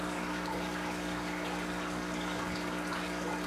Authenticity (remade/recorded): remade